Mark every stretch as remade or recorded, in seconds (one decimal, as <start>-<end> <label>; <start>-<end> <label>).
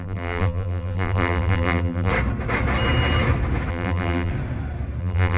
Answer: 0.0-2.1 remade; 2.1-3.7 recorded; 3.7-4.3 remade; 4.3-5.0 recorded; 5.0-5.4 remade